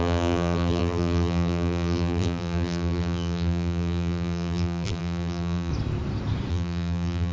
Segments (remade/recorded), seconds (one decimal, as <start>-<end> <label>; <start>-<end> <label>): 0.0-5.7 remade; 5.7-6.5 recorded; 6.5-7.3 remade